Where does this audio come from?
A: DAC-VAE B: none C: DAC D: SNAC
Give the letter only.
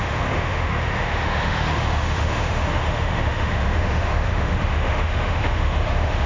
A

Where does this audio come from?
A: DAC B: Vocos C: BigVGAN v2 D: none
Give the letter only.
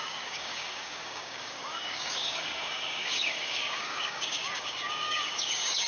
A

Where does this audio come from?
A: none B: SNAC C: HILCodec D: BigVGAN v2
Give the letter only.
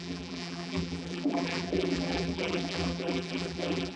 D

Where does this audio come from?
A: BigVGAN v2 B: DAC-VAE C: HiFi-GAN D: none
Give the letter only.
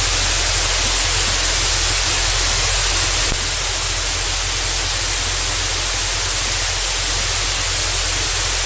D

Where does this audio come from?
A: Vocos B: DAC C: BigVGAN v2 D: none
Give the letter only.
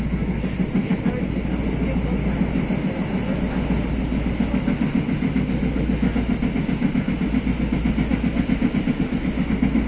D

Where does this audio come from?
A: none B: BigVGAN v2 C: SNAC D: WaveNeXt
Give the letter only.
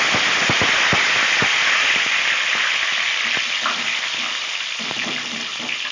A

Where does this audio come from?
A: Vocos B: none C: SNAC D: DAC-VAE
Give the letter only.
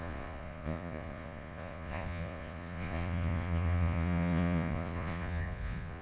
A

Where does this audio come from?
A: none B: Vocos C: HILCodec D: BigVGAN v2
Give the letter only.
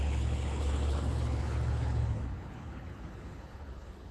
C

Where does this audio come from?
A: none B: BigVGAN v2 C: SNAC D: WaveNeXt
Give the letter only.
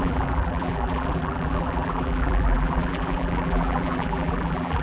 B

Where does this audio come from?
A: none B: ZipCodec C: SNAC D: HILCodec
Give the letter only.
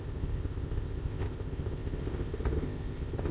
B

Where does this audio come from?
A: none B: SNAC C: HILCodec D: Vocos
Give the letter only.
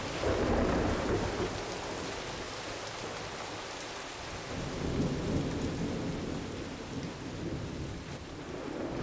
A